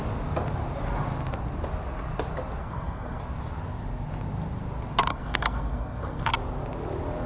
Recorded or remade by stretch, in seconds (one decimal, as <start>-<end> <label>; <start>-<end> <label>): 0.0-2.6 recorded; 2.6-3.2 remade; 3.2-5.1 recorded; 5.1-6.3 remade; 6.3-7.3 recorded

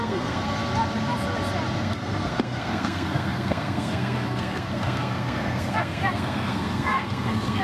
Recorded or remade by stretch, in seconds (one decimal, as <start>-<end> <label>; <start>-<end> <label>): 0.0-0.6 remade; 0.6-1.8 recorded; 1.8-7.6 remade

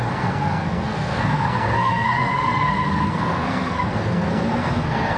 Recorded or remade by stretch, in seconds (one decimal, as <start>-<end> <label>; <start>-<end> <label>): 0.0-5.2 remade

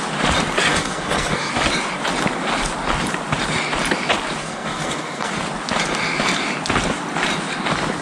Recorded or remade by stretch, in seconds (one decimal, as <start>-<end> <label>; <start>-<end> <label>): 0.0-0.7 recorded; 0.7-1.5 remade; 1.5-4.4 recorded; 4.4-5.3 remade; 5.3-8.0 recorded

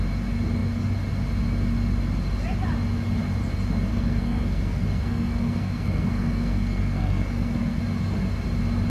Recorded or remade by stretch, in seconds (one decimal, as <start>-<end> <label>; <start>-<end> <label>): 0.0-3.9 recorded; 3.9-7.8 remade; 7.8-8.9 recorded

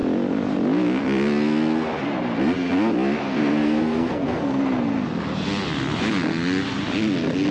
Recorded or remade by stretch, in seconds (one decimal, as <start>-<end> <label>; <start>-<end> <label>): 0.0-3.3 recorded; 3.3-4.6 remade; 4.6-7.5 recorded

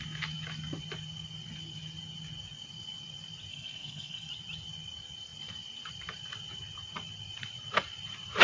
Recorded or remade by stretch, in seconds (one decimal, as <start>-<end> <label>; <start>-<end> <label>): 0.0-3.5 recorded; 3.5-4.3 remade; 4.3-8.4 recorded